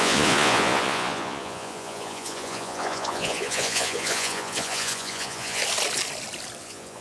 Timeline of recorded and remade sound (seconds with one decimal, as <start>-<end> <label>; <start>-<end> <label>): 0.0-5.6 remade; 5.6-6.6 recorded; 6.6-7.0 remade